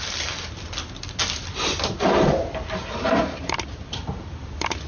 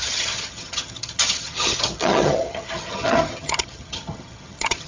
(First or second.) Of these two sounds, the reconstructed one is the second